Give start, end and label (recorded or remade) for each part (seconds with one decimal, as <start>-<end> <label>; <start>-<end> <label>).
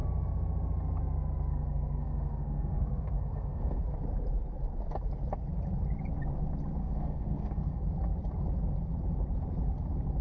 0.0-1.5 recorded; 1.5-3.8 remade; 3.8-6.8 recorded; 6.8-7.8 remade; 7.8-10.2 recorded